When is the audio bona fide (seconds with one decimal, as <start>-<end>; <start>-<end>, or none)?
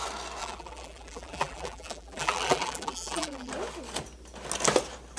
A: 0.0-0.4; 3.5-5.2